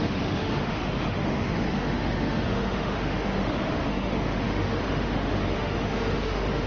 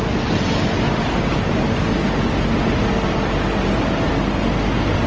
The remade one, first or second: first